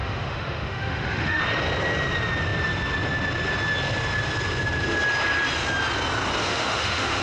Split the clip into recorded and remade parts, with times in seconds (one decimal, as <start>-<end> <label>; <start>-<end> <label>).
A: 0.0-1.4 remade; 1.4-6.4 recorded; 6.4-7.2 remade